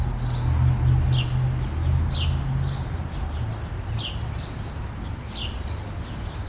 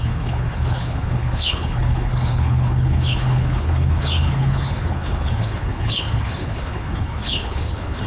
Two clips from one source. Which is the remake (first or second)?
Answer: second